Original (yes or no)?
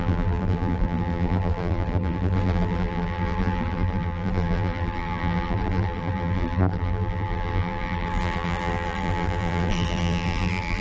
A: no